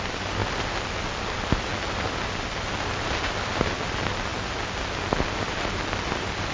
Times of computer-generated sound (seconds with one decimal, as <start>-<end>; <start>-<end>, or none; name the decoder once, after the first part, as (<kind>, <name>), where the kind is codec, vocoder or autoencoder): none